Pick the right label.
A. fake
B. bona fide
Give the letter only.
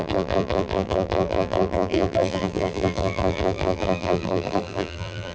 A